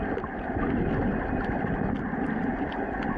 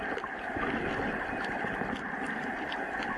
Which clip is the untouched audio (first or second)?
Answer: first